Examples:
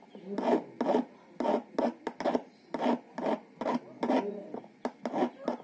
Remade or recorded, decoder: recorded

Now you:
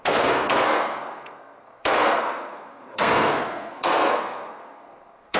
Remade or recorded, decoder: remade, codec, SNAC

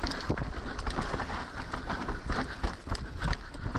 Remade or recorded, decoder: recorded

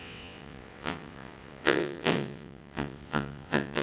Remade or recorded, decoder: remade, vocoder, WaveNeXt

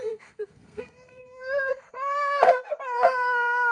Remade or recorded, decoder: remade, codec, SNAC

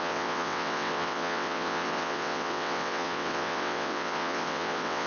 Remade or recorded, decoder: remade, vocoder, WaveNeXt